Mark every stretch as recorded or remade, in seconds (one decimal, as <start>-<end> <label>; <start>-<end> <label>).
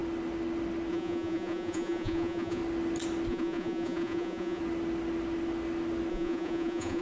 0.0-0.9 recorded; 0.9-2.6 remade; 2.6-3.3 recorded; 3.3-4.6 remade; 4.6-6.1 recorded; 6.1-7.0 remade